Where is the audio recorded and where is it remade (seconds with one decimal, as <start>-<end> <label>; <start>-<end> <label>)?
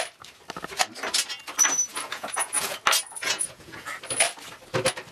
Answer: 0.0-1.9 recorded; 1.9-2.8 remade; 2.8-3.2 recorded; 3.2-3.9 remade; 3.9-5.1 recorded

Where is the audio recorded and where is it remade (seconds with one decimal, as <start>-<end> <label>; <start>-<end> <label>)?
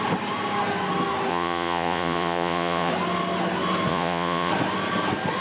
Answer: 0.0-1.3 recorded; 1.3-2.9 remade; 2.9-3.9 recorded; 3.9-4.5 remade; 4.5-5.4 recorded